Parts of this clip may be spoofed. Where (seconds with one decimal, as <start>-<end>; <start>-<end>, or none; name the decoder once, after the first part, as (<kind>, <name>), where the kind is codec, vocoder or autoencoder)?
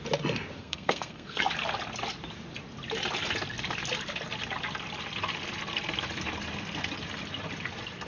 0.6-1.4 (codec, SNAC)